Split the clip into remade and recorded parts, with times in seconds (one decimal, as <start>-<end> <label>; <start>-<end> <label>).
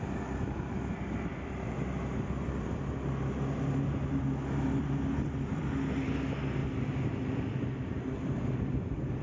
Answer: 0.0-1.3 recorded; 1.3-2.8 remade; 2.8-6.6 recorded; 6.6-9.2 remade